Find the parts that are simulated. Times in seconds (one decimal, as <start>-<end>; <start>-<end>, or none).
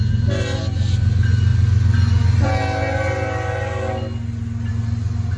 none